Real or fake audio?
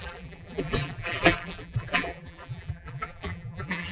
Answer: fake